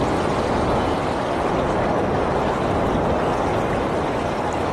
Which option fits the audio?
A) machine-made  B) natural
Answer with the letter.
B